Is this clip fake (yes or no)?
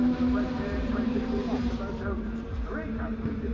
yes